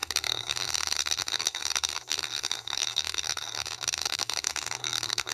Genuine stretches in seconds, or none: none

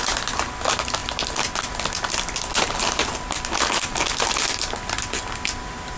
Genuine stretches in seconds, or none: 0.0-6.0

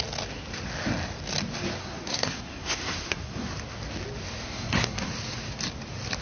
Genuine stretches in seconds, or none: 0.0-1.8; 3.5-4.4; 5.1-6.2

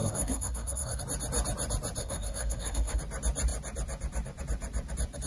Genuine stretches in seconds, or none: 1.0-2.0; 3.0-5.3